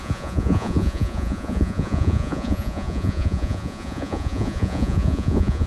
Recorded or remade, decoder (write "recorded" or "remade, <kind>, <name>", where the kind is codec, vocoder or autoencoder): remade, vocoder, Vocos